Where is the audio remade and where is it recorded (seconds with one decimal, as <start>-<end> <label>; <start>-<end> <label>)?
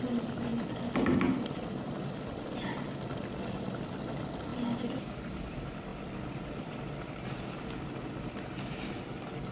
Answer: 0.0-0.5 remade; 0.5-2.2 recorded; 2.2-9.5 remade